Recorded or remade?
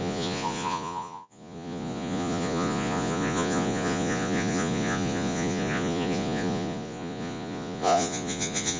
remade